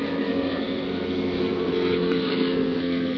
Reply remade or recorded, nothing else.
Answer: remade